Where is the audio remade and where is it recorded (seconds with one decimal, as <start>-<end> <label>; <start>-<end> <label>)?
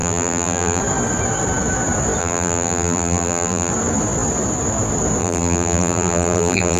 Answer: 0.0-0.8 remade; 0.8-2.2 recorded; 2.2-3.7 remade; 3.7-5.2 recorded; 5.2-6.8 remade